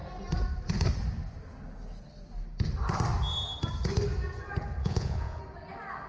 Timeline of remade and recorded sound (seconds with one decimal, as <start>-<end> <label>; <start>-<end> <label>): 0.0-4.8 recorded; 4.8-5.4 remade; 5.4-6.1 recorded